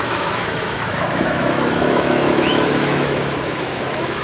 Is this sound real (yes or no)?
no